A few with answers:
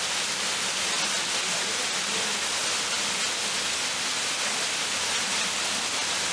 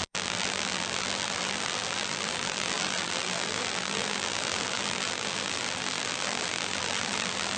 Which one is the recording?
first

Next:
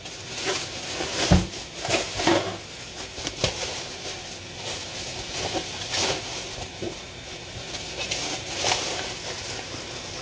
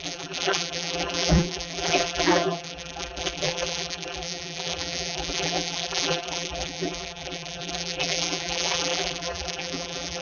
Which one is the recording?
first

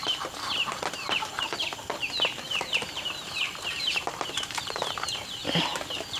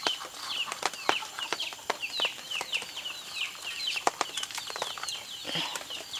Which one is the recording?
second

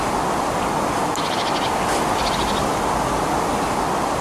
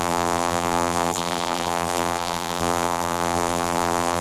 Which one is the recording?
first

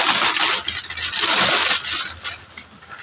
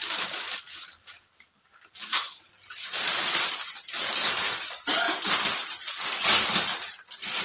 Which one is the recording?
first